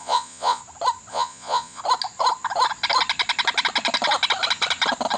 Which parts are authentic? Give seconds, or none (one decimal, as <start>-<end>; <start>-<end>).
0.6-1.1; 1.8-5.2